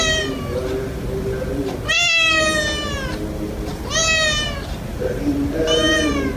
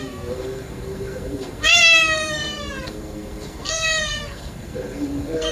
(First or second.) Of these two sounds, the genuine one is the first